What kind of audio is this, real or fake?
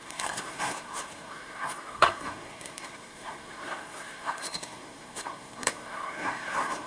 fake